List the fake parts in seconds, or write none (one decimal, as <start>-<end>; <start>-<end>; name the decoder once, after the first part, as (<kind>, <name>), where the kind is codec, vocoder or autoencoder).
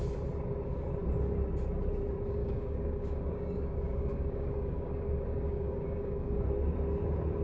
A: 2.4-6.4 (codec, DAC)